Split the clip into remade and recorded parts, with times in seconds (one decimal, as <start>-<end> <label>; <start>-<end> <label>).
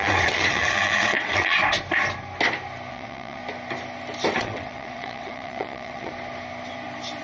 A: 0.0-1.6 remade; 1.6-2.9 recorded; 2.9-3.4 remade; 3.4-4.4 recorded; 4.4-6.1 remade; 6.1-7.2 recorded